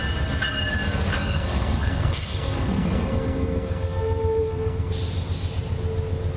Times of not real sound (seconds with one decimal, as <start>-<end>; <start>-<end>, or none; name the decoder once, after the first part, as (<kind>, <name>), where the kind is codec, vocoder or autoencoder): 1.1-4.9 (codec, SNAC)

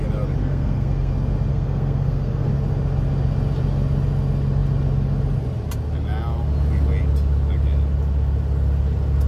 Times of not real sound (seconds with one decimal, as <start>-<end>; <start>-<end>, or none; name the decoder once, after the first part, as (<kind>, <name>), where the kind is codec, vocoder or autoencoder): 0.4-1.1 (codec, SNAC); 1.5-2.5

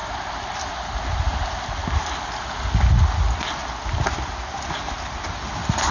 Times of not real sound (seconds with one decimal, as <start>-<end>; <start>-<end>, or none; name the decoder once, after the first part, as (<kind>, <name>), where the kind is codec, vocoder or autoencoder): 0.7-1.8 (vocoder, BigVGAN v2); 5.3-5.9

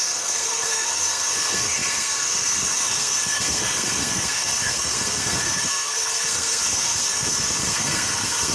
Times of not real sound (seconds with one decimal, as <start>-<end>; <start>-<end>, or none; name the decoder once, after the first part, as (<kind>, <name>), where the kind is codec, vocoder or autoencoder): 0.0-8.5 (codec, SNAC)

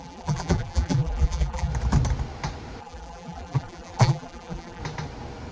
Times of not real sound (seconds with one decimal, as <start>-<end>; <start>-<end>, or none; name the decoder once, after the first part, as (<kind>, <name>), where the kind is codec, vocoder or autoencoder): 0.0-1.7 (vocoder, BigVGAN v2); 2.8-4.8